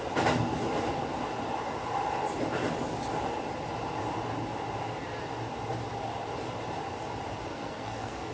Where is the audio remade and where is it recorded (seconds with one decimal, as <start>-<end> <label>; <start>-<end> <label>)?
0.0-7.5 recorded; 7.5-8.3 remade